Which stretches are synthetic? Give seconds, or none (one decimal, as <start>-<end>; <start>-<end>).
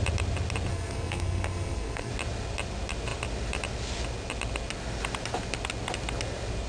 0.7-2.1